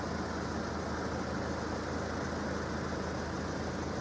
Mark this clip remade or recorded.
recorded